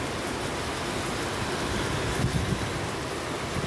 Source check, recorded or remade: recorded